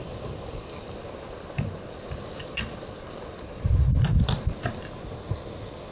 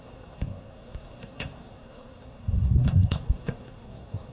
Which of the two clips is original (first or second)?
first